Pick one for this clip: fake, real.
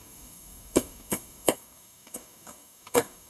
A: fake